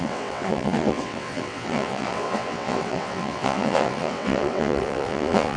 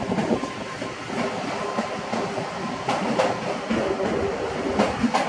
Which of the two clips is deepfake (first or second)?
first